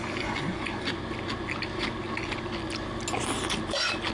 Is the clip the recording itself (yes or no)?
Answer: yes